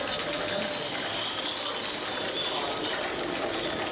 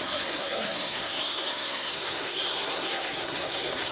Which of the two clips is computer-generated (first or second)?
second